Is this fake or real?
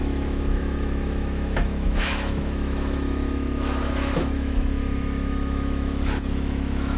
fake